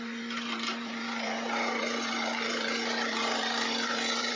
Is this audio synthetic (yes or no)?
yes